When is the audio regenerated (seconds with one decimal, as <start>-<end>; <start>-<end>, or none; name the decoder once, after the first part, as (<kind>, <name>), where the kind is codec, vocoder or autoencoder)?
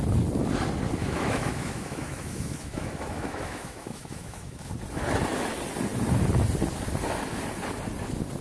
1.0-4.7 (autoencoder, DAC-VAE)